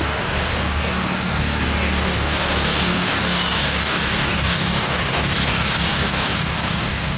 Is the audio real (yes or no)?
no